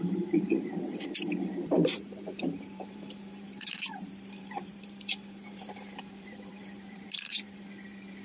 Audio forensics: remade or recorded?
remade